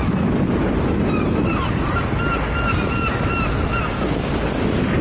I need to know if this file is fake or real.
real